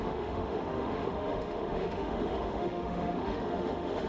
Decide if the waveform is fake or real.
fake